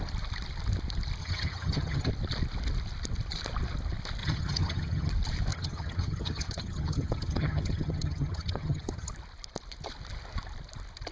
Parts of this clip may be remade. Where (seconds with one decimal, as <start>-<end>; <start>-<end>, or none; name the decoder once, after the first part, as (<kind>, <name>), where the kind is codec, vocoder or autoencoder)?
1.2-2.1 (vocoder, HiFi-GAN); 4.2-5.1; 5.5-9.1